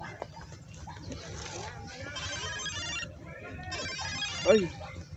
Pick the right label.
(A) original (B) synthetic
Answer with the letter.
A